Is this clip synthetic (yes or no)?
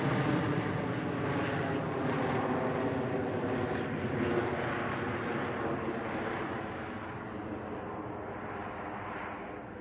no